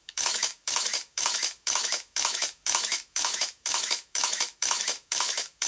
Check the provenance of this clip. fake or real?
fake